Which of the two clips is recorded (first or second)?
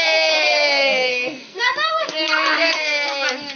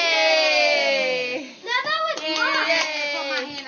second